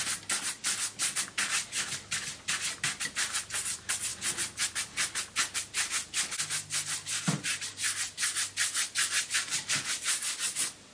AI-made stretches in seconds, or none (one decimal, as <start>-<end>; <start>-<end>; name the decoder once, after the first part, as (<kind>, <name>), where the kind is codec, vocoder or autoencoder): none